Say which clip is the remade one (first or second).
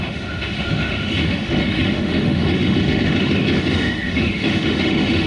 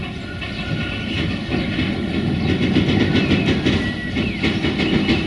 first